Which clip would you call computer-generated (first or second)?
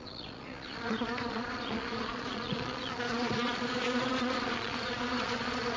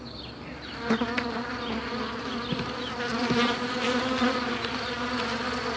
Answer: first